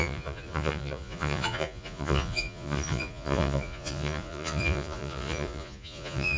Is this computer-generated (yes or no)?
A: yes